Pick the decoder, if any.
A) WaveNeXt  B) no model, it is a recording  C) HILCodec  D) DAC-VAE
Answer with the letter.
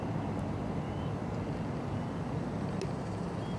B